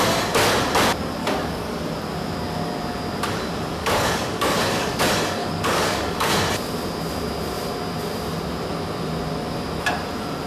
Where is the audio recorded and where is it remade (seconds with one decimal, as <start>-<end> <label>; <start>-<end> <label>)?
0.0-1.2 recorded; 1.2-1.8 remade; 1.8-3.8 recorded; 3.8-5.0 remade; 5.0-5.4 recorded; 5.4-6.3 remade; 6.3-10.5 recorded